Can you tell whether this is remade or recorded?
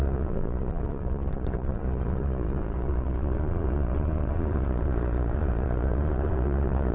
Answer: remade